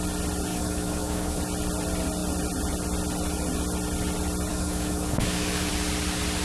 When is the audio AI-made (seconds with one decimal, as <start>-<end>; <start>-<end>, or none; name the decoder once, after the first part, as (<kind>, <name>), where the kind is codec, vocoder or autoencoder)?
0.5-1.4 (codec, DAC); 4.5-5.7